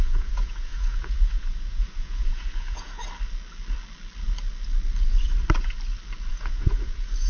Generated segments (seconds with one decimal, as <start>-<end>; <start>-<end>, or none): 0.0-3.0; 6.3-7.3